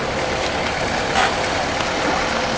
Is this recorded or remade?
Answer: recorded